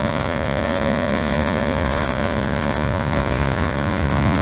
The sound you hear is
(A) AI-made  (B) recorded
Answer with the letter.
A